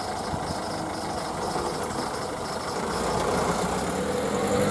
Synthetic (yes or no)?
no